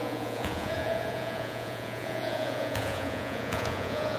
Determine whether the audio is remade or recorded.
remade